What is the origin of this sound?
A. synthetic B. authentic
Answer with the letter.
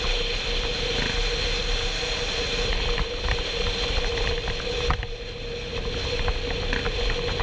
B